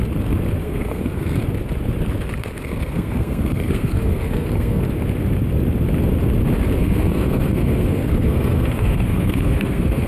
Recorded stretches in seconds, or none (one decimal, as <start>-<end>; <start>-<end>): 0.0-0.6; 1.4-2.4; 4.8-6.8